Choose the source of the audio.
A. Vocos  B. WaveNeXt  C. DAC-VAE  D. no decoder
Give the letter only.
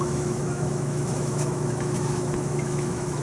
C